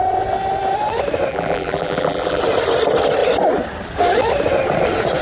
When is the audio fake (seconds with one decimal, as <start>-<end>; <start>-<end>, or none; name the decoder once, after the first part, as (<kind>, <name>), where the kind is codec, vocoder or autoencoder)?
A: 1.3-2.4 (vocoder, BigVGAN v2)